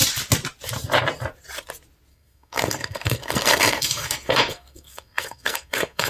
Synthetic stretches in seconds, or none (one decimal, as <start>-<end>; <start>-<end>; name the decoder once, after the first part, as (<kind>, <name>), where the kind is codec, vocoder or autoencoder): 2.1-6.1 (codec, SNAC)